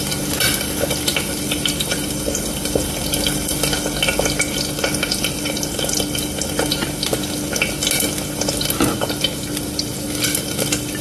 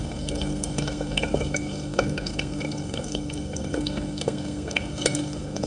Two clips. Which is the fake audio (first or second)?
second